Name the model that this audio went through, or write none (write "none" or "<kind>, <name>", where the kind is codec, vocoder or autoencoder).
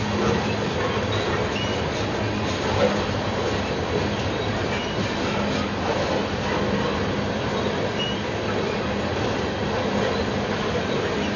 none